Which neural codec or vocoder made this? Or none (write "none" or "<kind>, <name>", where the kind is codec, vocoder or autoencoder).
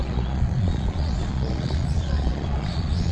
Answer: vocoder, Vocos